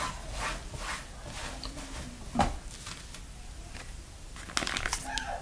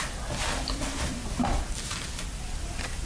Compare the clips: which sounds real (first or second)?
first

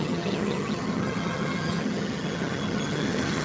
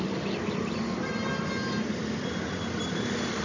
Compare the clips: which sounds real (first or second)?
second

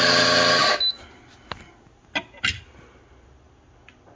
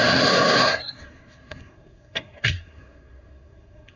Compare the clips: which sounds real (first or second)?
first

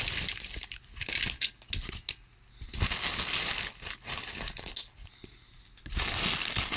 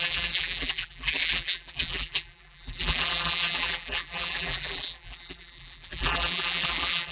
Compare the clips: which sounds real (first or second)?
first